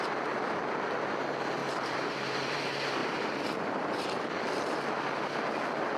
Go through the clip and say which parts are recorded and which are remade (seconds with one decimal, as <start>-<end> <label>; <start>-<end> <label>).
0.0-1.6 recorded; 1.6-2.6 remade; 2.6-3.0 recorded; 3.0-4.4 remade; 4.4-6.0 recorded